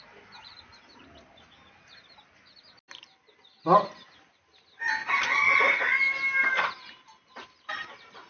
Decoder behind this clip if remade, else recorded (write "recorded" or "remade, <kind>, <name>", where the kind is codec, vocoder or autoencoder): recorded